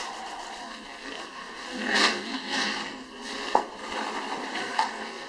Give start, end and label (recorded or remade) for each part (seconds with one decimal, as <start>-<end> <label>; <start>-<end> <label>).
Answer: 0.0-0.6 recorded; 0.6-3.7 remade; 3.7-4.6 recorded; 4.6-5.3 remade